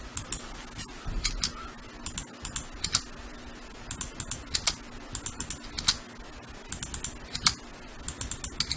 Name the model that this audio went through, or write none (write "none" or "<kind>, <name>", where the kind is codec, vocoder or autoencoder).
none